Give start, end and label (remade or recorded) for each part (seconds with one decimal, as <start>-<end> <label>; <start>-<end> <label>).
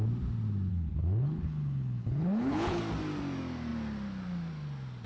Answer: 0.0-0.7 recorded; 0.7-2.8 remade; 2.8-5.1 recorded